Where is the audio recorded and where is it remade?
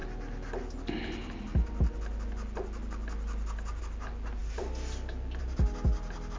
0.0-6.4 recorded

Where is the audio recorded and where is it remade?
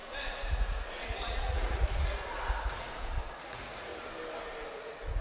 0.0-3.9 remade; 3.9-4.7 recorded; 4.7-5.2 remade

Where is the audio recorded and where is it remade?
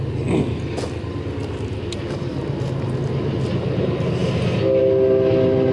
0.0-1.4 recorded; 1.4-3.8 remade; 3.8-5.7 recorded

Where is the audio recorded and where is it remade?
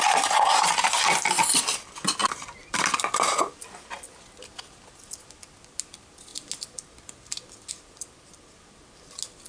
0.0-9.5 recorded